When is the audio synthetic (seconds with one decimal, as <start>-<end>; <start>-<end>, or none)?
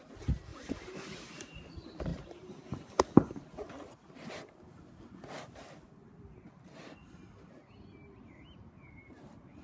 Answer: 0.5-1.5; 2.1-2.9